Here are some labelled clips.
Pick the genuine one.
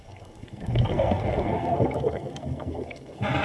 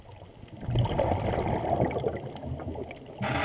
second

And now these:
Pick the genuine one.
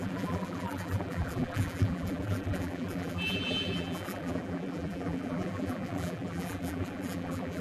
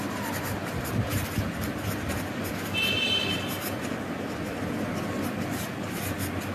second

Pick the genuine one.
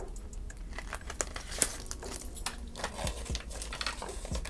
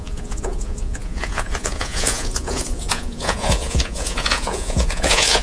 first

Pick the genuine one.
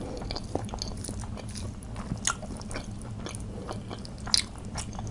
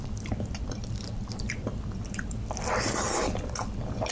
first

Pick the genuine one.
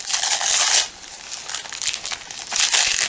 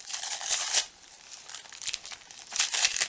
first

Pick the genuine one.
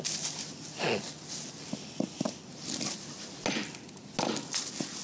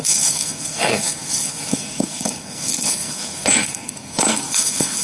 first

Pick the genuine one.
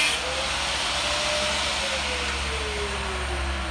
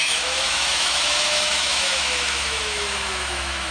first